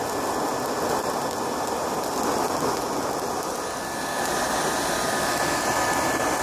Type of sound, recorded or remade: recorded